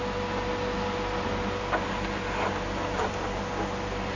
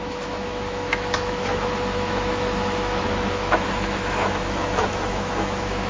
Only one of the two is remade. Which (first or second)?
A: second